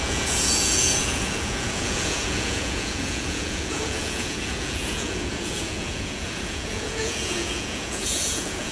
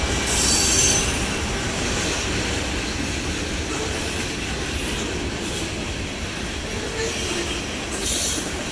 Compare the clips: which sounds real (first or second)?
second